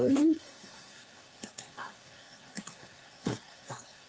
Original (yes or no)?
no